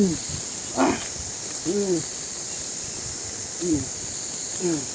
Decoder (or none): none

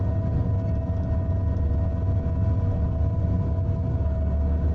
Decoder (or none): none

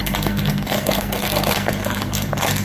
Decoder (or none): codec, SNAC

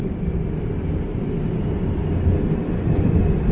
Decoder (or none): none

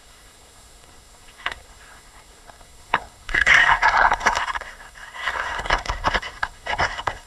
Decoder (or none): codec, SNAC